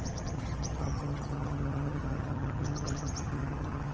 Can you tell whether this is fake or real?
fake